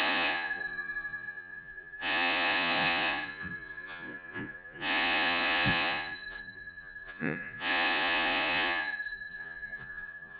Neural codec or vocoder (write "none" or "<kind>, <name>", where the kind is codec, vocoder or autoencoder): vocoder, Vocos